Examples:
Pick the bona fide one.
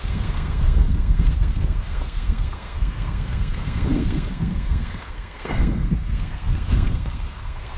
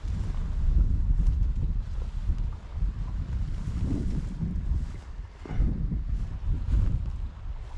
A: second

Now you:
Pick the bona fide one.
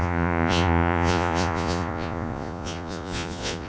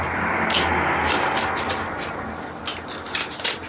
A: second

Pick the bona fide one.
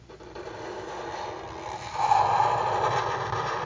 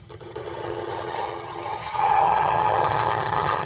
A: first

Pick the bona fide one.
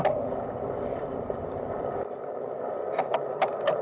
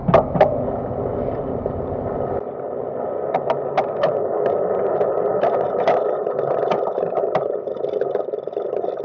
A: second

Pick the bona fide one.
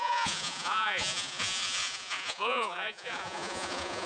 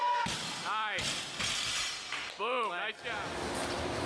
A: second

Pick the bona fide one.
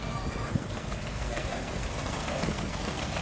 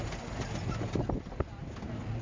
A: second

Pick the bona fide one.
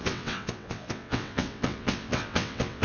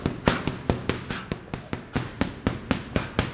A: second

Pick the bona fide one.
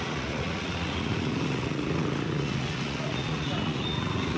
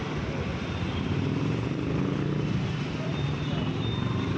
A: second